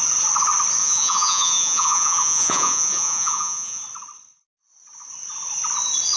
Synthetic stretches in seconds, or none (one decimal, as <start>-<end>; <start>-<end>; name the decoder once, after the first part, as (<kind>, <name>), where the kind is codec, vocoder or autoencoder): 0.8-3.8 (vocoder, Vocos)